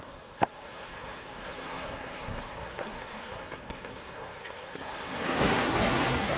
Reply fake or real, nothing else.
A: fake